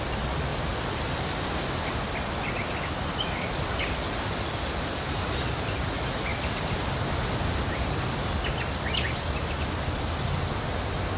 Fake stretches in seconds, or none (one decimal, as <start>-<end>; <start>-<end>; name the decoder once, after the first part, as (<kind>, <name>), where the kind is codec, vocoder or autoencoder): none